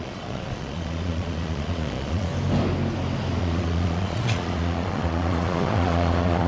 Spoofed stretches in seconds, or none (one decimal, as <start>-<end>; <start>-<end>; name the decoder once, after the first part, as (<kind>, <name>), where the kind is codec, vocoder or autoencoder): 0.0-2.3 (vocoder, Vocos); 3.4-6.5

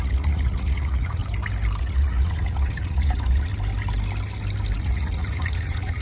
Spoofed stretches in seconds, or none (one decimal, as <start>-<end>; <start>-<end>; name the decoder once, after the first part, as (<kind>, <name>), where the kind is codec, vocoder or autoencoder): 0.0-1.2 (vocoder, Vocos); 1.8-3.5; 4.8-6.0